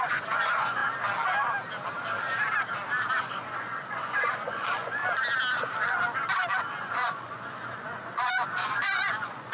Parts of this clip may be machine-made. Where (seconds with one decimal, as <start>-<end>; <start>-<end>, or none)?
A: 0.0-0.8; 3.2-5.0; 6.8-9.5